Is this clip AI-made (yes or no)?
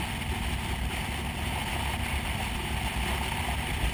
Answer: no